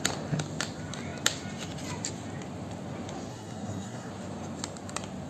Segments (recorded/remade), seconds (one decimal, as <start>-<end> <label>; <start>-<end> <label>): 0.0-3.3 recorded; 3.3-4.1 remade; 4.1-5.3 recorded